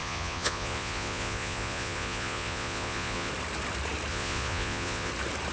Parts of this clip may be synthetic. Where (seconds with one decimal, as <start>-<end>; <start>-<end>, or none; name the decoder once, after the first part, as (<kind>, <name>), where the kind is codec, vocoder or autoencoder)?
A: 0.0-3.3 (vocoder, Vocos); 4.1-5.1